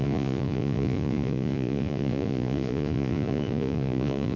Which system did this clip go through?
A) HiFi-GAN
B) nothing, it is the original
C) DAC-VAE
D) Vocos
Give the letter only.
D